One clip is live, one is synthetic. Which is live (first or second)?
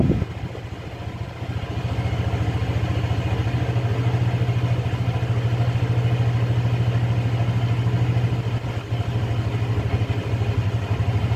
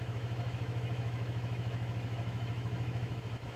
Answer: first